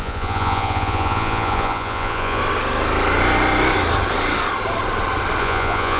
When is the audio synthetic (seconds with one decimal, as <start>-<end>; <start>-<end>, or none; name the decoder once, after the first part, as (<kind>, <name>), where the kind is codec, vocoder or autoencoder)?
0.0-2.4 (vocoder, Vocos); 5.4-6.0